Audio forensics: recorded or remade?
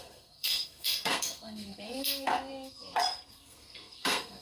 remade